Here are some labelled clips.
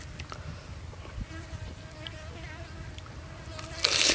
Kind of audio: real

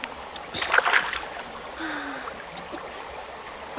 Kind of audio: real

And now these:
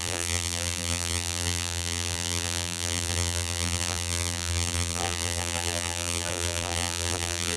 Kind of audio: fake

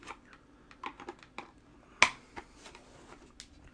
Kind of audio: real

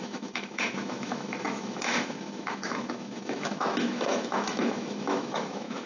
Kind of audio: fake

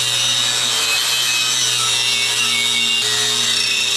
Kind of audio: real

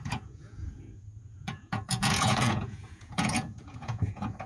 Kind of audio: fake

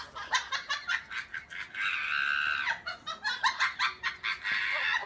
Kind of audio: real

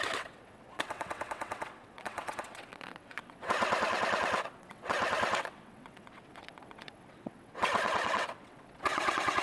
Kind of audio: fake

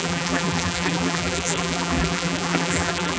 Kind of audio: fake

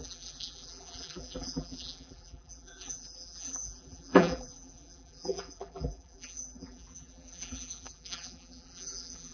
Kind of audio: fake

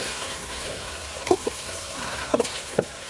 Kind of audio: fake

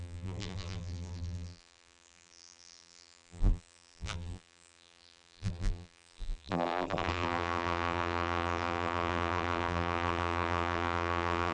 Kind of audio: fake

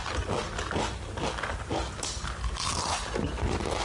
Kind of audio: real